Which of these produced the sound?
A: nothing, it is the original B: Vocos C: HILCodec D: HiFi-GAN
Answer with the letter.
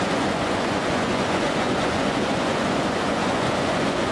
B